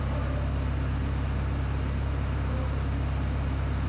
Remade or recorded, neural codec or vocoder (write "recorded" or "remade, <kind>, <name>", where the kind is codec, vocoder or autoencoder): recorded